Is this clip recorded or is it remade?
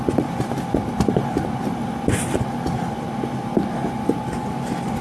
recorded